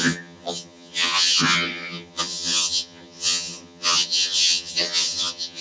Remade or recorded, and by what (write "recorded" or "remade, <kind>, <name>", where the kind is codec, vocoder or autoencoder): remade, vocoder, HiFi-GAN